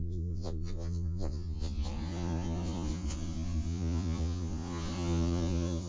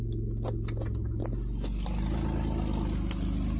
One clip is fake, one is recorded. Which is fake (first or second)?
first